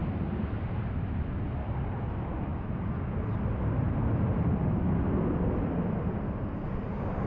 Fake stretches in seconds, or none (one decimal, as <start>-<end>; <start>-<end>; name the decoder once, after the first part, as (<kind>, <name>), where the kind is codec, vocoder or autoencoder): none